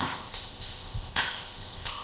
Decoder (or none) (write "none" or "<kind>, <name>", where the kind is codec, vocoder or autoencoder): codec, ZipCodec